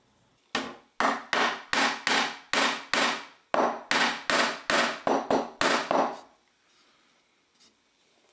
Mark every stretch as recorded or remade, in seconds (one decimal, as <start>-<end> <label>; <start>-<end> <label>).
0.0-8.3 recorded